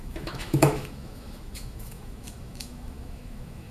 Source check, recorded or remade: remade